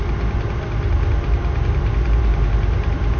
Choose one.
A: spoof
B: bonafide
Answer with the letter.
B